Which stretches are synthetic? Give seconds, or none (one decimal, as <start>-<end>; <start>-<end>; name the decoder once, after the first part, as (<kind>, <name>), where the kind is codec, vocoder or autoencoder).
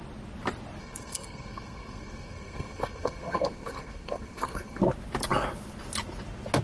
0.8-4.8 (codec, SNAC)